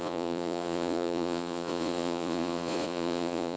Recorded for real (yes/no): no